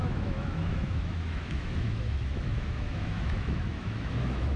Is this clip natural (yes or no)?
no